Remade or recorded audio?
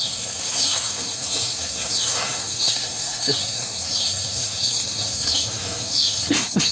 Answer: remade